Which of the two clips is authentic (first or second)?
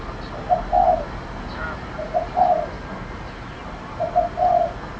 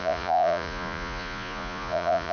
first